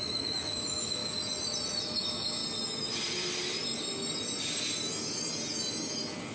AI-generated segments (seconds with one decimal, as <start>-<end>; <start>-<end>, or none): 0.0-1.0; 1.8-2.4